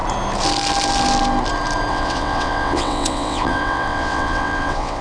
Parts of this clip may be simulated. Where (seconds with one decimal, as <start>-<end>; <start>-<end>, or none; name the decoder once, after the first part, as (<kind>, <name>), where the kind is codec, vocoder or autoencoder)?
1.9-5.0 (vocoder, WaveNeXt)